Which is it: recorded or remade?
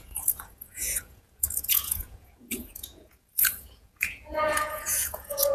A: remade